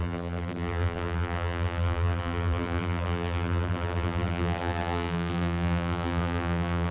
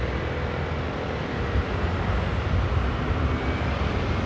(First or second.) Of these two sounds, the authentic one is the second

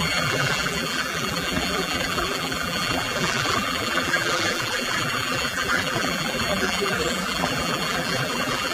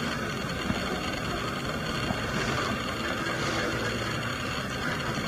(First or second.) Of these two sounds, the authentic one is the second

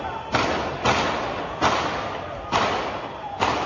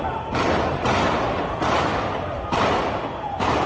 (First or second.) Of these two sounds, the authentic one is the first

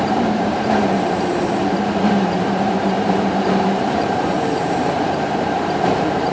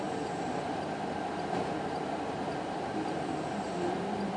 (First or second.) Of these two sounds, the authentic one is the second